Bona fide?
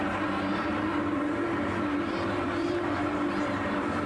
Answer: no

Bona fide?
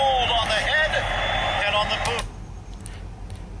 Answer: yes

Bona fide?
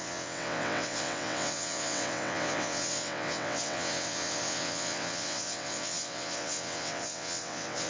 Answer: no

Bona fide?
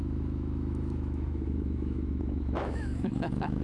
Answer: no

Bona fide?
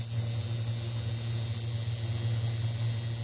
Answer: yes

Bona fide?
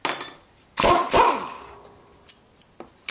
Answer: yes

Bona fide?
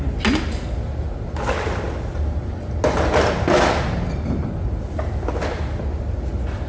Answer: yes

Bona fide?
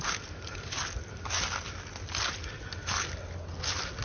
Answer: yes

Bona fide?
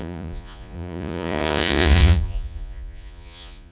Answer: no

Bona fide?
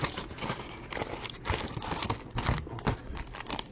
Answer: yes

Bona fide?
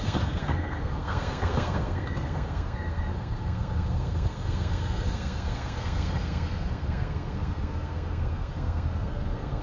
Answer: no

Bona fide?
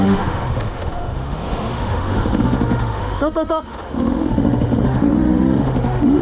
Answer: no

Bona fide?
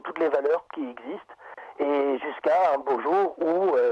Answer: yes